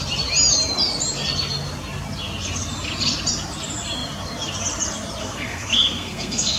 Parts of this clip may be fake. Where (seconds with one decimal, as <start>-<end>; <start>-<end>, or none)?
5.2-6.6